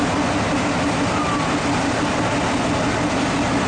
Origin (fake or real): real